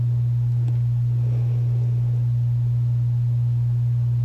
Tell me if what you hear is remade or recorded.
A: recorded